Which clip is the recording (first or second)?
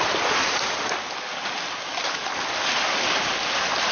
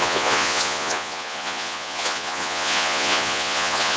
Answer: first